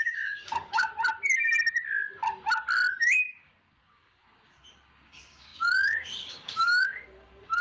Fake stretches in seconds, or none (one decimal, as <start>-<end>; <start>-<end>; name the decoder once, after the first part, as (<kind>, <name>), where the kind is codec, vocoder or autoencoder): 0.0-0.9 (codec, DAC); 3.0-7.6

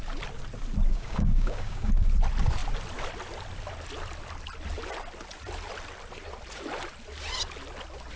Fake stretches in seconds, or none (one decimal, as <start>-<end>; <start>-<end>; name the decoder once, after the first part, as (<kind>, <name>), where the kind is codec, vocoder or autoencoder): 0.9-1.9 (codec, DAC)

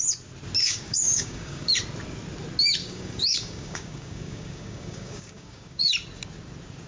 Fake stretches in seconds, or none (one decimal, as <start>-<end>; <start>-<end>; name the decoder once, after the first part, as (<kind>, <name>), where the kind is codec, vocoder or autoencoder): 0.6-1.7 (codec, DAC); 2.8-5.9